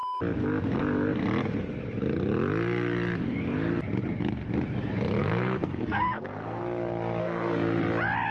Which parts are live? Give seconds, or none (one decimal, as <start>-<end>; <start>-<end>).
0.0-5.2; 6.6-7.2; 7.8-8.3